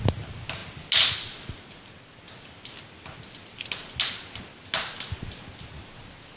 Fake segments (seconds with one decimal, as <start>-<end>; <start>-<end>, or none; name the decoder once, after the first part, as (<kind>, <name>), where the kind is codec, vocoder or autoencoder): none